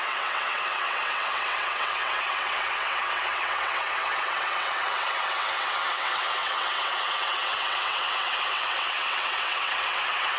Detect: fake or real fake